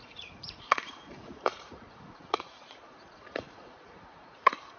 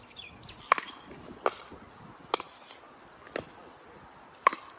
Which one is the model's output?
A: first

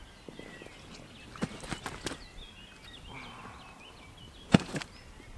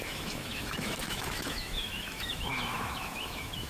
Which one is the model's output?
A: second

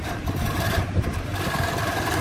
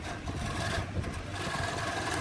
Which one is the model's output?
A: first